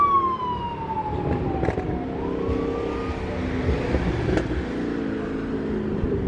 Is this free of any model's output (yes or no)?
yes